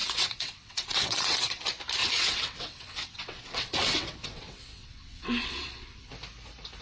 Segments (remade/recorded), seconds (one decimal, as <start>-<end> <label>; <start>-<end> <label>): 0.0-1.6 remade; 1.6-2.0 recorded; 2.0-6.1 remade; 6.1-6.8 recorded